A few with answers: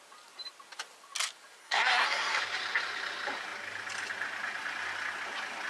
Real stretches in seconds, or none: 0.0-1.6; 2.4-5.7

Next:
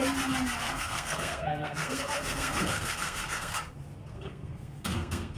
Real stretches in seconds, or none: 0.0-0.6; 3.6-4.1

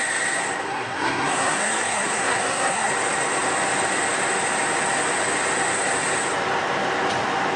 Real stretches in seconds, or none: 0.0-0.6; 2.9-7.6

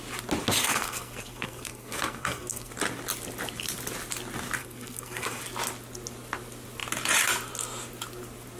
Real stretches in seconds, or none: 0.0-0.6; 2.7-4.6; 5.4-8.6

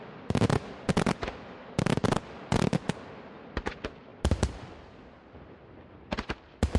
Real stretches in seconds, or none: 0.0-6.8

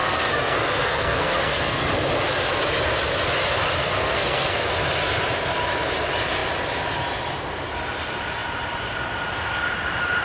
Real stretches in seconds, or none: 1.8-3.8; 4.7-10.2

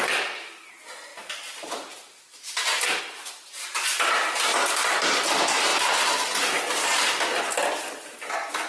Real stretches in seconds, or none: 0.0-8.7